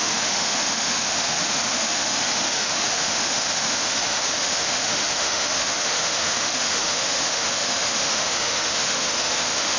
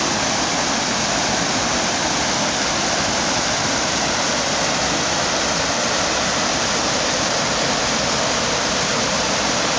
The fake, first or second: first